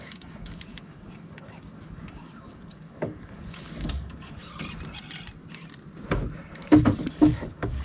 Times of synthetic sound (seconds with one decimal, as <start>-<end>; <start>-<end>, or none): 0.0-4.4; 7.1-7.8